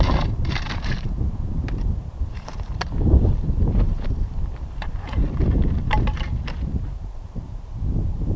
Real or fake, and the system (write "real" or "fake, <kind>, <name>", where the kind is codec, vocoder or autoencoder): fake, vocoder, BigVGAN v2